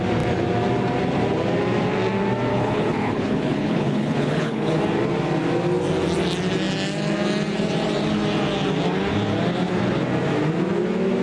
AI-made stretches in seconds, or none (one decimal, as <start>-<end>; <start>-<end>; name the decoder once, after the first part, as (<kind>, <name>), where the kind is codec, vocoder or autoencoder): 2.5-4.8 (codec, HILCodec)